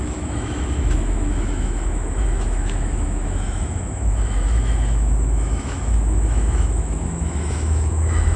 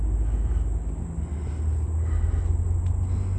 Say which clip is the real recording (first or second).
second